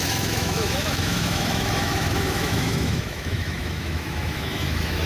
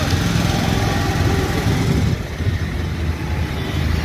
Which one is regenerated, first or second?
first